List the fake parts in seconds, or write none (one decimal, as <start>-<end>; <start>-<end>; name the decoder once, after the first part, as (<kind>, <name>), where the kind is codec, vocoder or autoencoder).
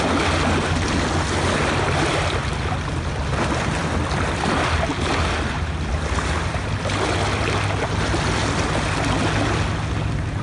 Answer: none